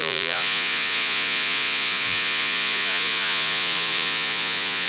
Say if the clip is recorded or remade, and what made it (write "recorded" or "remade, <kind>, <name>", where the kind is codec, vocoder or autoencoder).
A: remade, vocoder, Vocos